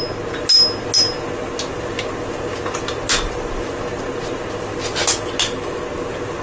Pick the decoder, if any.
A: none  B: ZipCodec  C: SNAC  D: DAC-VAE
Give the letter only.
A